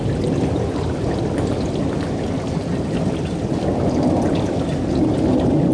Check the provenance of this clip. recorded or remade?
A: recorded